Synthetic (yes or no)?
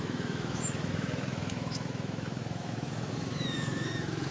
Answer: yes